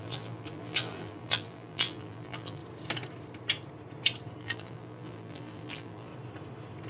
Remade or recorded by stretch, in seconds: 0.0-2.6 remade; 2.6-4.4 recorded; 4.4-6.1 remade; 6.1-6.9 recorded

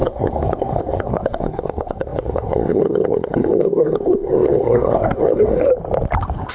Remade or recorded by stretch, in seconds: 0.0-5.7 remade; 5.7-6.5 recorded

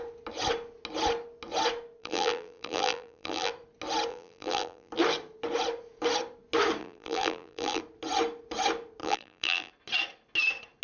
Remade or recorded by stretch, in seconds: 0.0-2.0 recorded; 2.0-3.5 remade; 3.5-4.1 recorded; 4.1-4.9 remade; 4.9-6.8 recorded; 6.8-7.8 remade; 7.8-9.0 recorded; 9.0-9.7 remade; 9.7-10.8 recorded

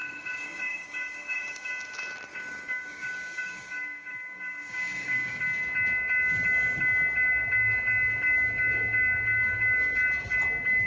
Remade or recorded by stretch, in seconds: 0.0-1.7 remade; 1.7-2.3 recorded; 2.3-5.4 remade; 5.4-10.9 recorded

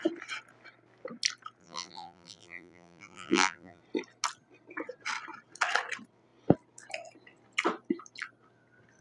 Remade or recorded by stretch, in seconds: 0.0-1.6 recorded; 1.6-3.8 remade; 3.8-9.0 recorded

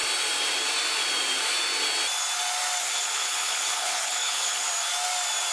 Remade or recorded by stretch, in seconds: 0.0-2.8 recorded; 2.8-4.7 remade; 4.7-5.5 recorded